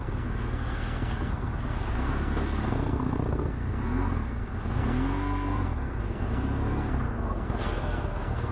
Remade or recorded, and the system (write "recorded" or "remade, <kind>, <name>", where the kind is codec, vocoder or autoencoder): remade, codec, SNAC